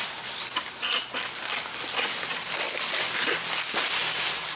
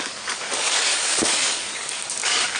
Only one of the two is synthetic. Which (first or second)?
second